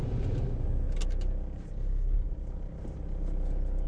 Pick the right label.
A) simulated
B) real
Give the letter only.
B